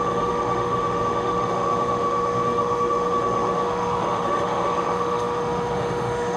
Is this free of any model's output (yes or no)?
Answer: no